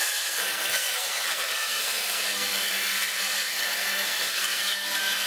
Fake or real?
fake